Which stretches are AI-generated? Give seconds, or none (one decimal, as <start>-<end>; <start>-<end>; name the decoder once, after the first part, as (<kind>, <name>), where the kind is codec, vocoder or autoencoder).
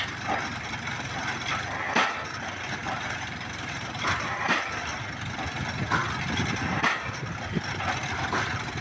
2.8-4.6 (vocoder, BigVGAN v2)